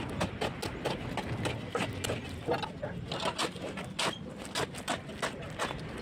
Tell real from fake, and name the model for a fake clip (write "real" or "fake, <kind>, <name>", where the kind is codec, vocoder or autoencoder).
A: real